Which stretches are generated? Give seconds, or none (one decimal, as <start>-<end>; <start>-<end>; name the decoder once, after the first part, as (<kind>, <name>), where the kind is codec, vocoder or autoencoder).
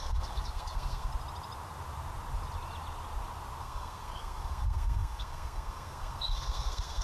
0.0-1.1 (codec, SNAC); 3.6-7.0